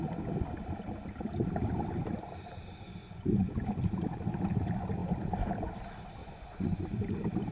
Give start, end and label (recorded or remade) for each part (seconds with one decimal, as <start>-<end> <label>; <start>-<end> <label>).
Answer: 0.0-3.0 recorded; 3.0-3.8 remade; 3.8-6.2 recorded; 6.2-6.8 remade; 6.8-7.5 recorded